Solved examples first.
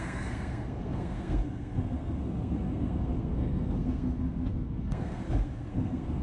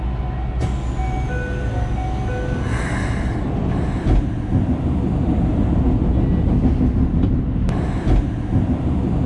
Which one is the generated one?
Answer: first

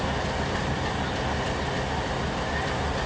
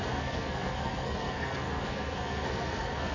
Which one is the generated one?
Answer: second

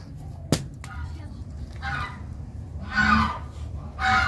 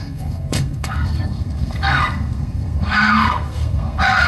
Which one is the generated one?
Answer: second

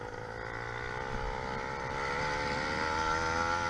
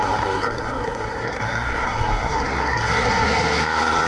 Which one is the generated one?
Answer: second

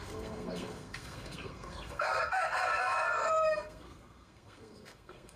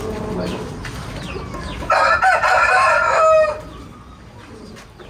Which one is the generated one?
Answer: first